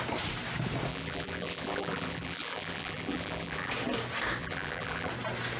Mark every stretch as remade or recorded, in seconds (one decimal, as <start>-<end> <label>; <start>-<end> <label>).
0.0-0.9 recorded; 0.9-3.7 remade; 3.7-4.4 recorded; 4.4-5.1 remade; 5.1-5.6 recorded